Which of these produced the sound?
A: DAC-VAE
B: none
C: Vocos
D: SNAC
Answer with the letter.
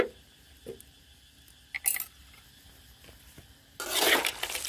B